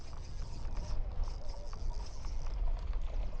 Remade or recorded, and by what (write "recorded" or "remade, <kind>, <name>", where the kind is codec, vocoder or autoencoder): recorded